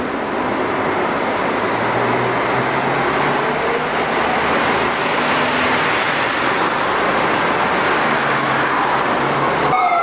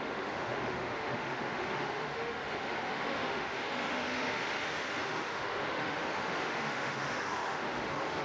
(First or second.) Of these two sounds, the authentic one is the first